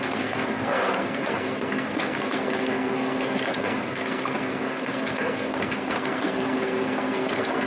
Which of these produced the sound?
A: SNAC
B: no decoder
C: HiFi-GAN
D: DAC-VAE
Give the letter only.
A